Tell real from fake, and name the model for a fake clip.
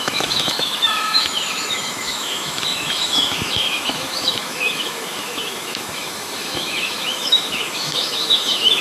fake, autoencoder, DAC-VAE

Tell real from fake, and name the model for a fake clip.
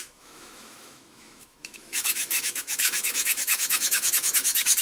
fake, autoencoder, DAC-VAE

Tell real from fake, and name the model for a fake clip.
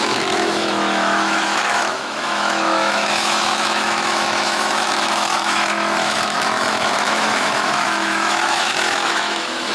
fake, autoencoder, DAC-VAE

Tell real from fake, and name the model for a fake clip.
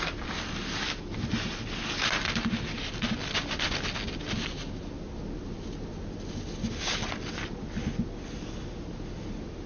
real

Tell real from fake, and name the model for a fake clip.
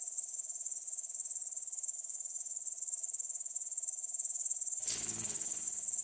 fake, autoencoder, DAC-VAE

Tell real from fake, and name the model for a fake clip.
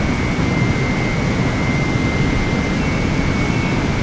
real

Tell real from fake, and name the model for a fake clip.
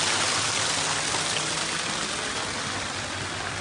real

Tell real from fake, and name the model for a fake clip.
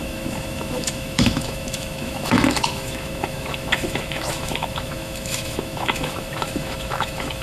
fake, autoencoder, DAC-VAE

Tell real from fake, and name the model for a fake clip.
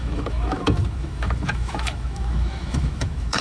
fake, autoencoder, DAC-VAE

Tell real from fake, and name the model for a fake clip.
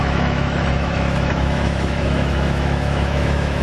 fake, autoencoder, DAC-VAE